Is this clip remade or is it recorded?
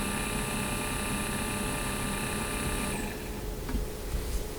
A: recorded